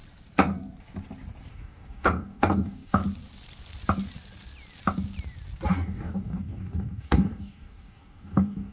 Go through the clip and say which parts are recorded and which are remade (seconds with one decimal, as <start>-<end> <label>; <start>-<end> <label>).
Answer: 0.0-1.5 recorded; 1.5-3.0 remade; 3.0-5.7 recorded; 5.7-8.7 remade

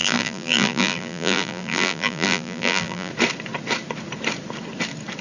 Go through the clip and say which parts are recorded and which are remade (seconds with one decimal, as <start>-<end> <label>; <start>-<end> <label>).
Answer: 0.0-3.1 remade; 3.1-5.2 recorded

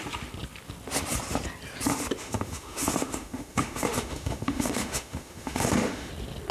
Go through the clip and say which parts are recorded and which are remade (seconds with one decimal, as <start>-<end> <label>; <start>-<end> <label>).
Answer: 0.0-2.2 recorded; 2.2-6.1 remade; 6.1-6.5 recorded

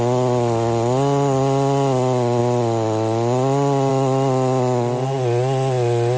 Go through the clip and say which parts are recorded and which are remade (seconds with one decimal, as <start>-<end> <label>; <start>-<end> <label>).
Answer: 0.0-6.2 recorded

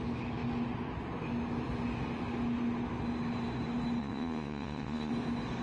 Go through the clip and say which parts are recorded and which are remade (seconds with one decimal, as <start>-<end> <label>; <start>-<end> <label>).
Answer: 0.0-4.0 recorded; 4.0-5.1 remade; 5.1-5.6 recorded